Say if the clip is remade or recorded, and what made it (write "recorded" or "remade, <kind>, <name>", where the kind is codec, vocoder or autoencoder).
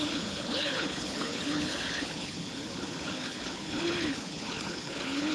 remade, codec, HILCodec